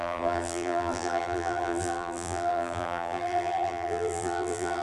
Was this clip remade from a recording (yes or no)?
yes